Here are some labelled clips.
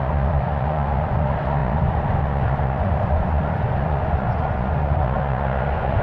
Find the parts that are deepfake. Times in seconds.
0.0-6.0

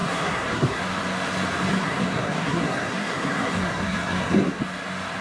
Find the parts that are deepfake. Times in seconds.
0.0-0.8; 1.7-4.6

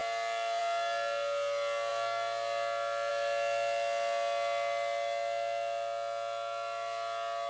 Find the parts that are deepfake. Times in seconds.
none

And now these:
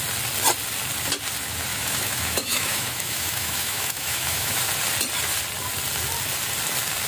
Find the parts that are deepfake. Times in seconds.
1.7-4.6